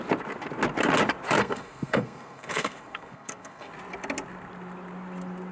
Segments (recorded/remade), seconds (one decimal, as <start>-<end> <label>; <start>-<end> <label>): 0.0-1.4 recorded; 1.4-3.7 remade; 3.7-5.5 recorded